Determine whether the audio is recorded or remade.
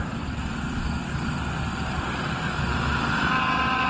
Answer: recorded